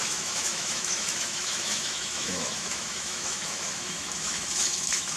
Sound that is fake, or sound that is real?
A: fake